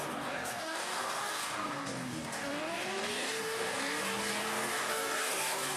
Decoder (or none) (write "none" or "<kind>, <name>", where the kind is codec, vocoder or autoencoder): codec, DAC